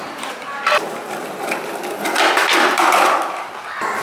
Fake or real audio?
fake